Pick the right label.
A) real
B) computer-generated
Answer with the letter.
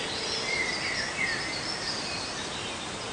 A